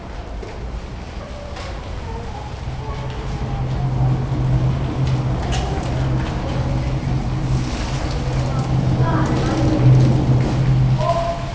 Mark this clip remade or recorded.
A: recorded